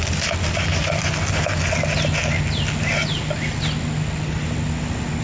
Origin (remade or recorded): recorded